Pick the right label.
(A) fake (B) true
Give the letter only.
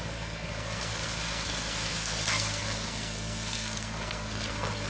A